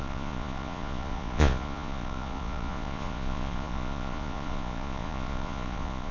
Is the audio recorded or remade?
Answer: remade